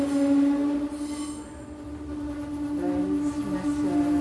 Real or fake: real